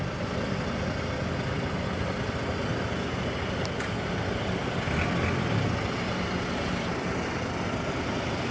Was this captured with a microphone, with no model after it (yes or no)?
yes